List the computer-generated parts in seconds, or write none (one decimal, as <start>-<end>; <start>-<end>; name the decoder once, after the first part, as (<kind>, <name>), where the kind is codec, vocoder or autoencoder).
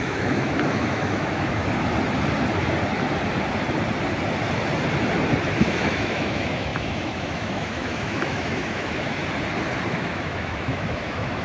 0.0-1.6 (autoencoder, DAC-VAE); 5.5-9.2; 9.9-11.4